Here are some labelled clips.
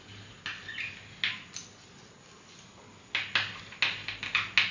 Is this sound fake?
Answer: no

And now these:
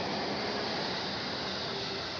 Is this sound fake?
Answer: no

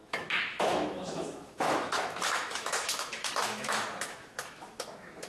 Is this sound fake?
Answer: yes